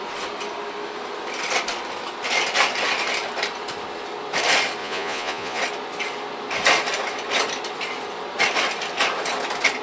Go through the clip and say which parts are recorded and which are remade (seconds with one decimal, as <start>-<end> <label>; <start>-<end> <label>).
0.0-4.8 recorded; 4.8-5.6 remade; 5.6-9.8 recorded